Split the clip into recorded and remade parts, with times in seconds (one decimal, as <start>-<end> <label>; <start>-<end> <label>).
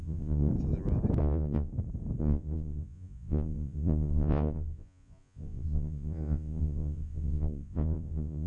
0.0-0.5 remade; 0.5-1.2 recorded; 1.2-1.7 remade; 1.7-2.2 recorded; 2.2-8.5 remade